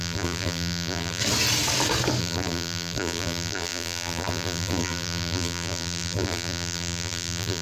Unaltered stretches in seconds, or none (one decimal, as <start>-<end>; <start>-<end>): 1.2-2.2